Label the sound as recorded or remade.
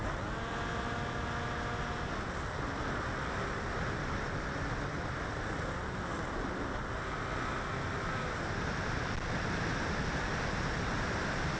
recorded